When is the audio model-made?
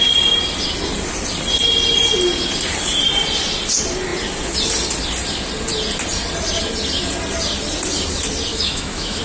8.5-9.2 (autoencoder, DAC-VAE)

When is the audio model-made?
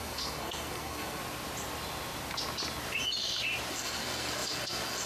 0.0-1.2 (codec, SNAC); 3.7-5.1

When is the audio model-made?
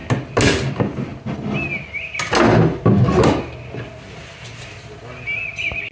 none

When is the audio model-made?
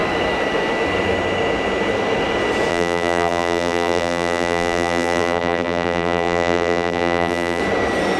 2.7-7.6 (vocoder, BigVGAN v2)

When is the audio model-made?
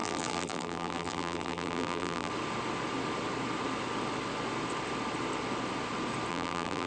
0.0-2.3 (vocoder, BigVGAN v2); 6.3-6.9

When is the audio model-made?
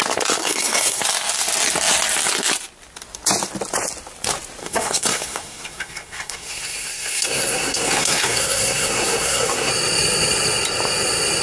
0.4-1.0 (codec, SNAC); 4.6-9.7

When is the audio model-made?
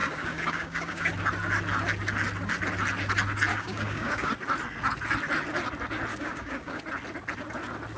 0.0-1.1 (codec, DAC); 3.5-4.3; 6.1-6.8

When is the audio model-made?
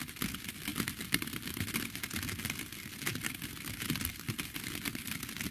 none